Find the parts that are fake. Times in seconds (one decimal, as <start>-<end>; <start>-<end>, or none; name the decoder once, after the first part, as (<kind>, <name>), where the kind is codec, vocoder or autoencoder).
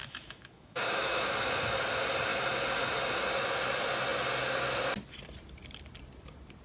0.0-1.3 (autoencoder, DAC-VAE)